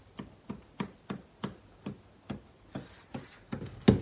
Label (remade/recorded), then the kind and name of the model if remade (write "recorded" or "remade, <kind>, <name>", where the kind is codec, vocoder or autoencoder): recorded